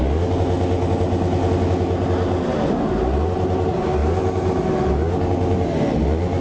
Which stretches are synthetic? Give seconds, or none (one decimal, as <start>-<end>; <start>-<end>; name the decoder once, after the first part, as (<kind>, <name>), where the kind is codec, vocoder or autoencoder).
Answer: none